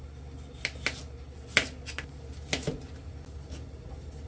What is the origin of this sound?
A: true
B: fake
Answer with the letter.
A